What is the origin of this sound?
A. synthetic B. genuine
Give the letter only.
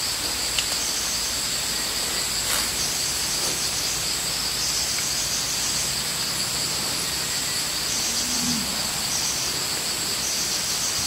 B